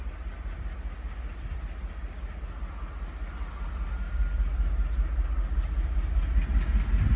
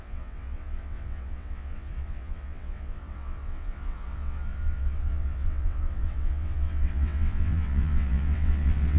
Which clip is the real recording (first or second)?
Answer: first